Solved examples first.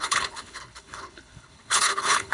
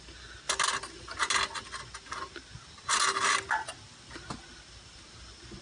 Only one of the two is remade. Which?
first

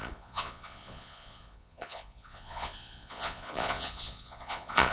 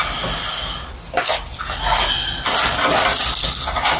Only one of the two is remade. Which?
first